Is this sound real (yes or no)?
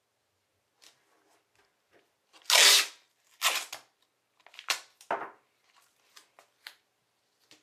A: yes